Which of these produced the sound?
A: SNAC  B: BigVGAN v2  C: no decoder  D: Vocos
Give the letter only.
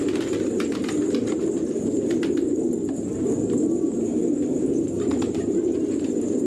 C